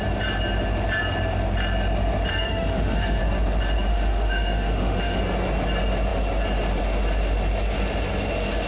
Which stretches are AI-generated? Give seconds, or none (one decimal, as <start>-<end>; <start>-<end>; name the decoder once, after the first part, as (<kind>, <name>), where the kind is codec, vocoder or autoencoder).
2.3-3.2 (autoencoder, DAC-VAE); 3.9-5.2